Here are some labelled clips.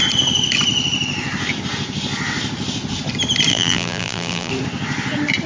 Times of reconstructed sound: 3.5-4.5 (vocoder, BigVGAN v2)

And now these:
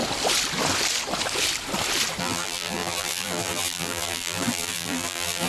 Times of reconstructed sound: 2.2-5.5 (vocoder, BigVGAN v2)

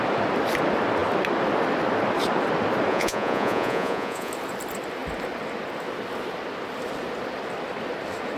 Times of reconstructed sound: 2.9-4.3 (vocoder, Vocos)

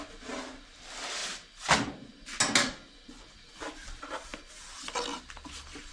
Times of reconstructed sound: none

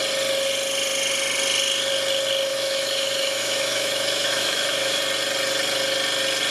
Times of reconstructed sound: 2.5-5.0 (autoencoder, DAC-VAE)

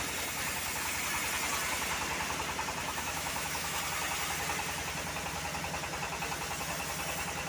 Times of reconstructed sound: 2.8-3.8 (autoencoder, DAC-VAE)

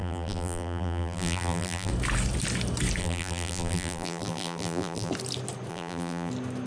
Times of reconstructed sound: 0.0-1.9 (vocoder, BigVGAN v2); 3.0-5.1; 5.7-6.3

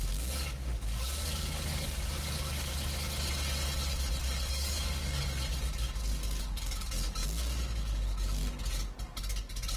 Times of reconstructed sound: 0.0-2.7 (codec, DAC); 4.5-8.4